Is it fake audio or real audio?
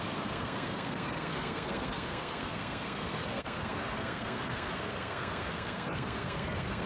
fake